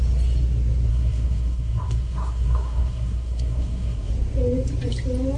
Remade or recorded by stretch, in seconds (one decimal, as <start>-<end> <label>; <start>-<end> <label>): 0.0-0.9 recorded; 0.9-4.1 remade; 4.1-5.4 recorded

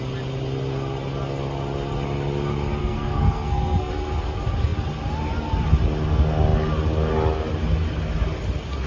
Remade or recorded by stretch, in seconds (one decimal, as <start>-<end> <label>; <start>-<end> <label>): 0.0-2.8 recorded; 2.8-3.9 remade; 3.9-8.9 recorded

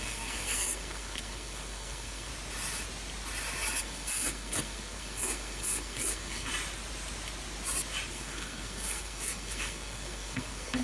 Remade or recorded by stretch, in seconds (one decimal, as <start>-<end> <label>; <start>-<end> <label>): 0.0-2.3 remade; 2.3-3.8 recorded; 3.8-6.5 remade; 6.5-8.1 recorded; 8.1-10.8 remade